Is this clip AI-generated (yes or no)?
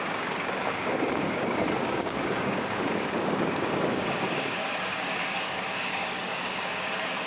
yes